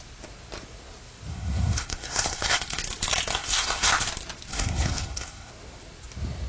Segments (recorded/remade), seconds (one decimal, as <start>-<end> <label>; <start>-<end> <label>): 0.0-1.3 recorded; 1.3-2.8 remade; 2.8-3.4 recorded; 3.4-3.9 remade; 3.9-4.5 recorded; 4.5-5.5 remade; 5.5-6.5 recorded